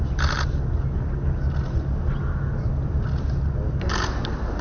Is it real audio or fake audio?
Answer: real